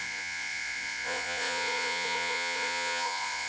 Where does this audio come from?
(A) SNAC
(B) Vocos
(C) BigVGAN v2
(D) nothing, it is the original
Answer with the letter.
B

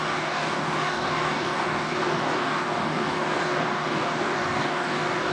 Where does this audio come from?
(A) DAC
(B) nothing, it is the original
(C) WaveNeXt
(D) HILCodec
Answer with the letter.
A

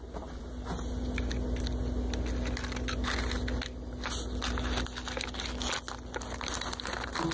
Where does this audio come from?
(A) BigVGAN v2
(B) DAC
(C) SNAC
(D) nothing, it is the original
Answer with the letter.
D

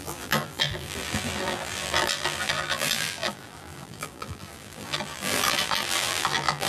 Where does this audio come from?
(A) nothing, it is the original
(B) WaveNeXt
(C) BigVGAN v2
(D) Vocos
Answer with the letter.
C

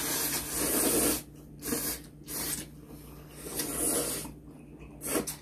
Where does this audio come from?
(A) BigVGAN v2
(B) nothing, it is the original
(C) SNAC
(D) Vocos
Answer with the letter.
B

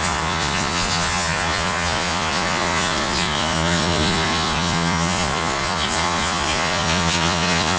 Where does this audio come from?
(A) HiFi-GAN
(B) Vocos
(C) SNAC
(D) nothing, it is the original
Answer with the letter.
B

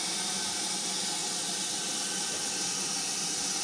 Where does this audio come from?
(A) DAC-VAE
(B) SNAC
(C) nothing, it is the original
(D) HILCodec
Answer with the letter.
C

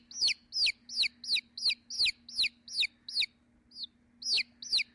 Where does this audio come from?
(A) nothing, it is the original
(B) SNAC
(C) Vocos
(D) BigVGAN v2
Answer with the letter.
A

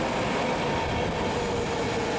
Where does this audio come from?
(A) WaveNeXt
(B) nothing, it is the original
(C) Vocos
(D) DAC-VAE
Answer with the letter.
B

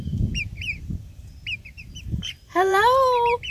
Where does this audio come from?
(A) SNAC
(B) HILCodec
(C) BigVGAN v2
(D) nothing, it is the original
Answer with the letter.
C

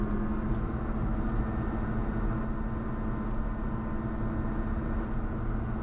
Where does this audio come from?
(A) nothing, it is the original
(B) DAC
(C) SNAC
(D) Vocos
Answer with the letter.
A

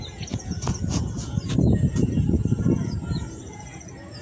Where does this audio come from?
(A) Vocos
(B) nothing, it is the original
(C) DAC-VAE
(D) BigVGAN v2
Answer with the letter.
A